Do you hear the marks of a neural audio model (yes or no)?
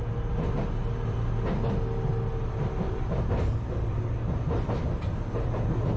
no